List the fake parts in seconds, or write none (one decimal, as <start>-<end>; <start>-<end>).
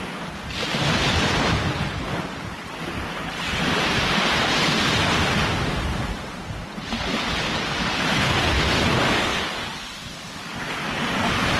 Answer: 9.3-11.6